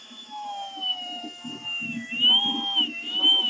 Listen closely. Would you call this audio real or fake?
fake